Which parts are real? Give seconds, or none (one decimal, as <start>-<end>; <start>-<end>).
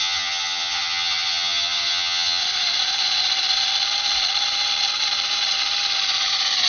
2.4-6.7